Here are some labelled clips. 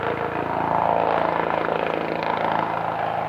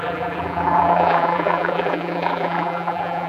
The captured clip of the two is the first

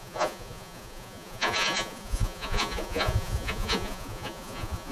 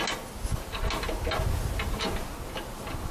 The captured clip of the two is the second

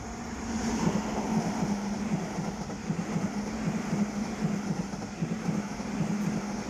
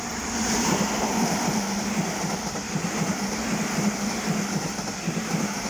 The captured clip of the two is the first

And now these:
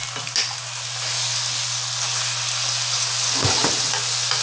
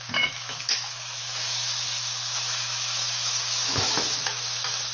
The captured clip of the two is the first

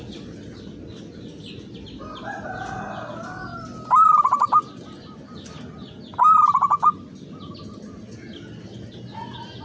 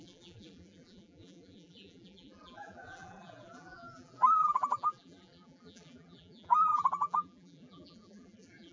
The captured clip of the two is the first